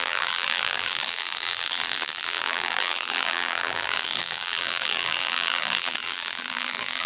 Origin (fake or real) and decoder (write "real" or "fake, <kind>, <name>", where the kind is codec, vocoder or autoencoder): fake, vocoder, BigVGAN v2